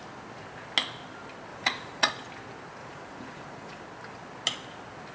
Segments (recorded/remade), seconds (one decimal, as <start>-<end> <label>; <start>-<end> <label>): 0.0-1.5 recorded; 1.5-2.1 remade; 2.1-2.8 recorded; 2.8-3.8 remade; 3.8-5.1 recorded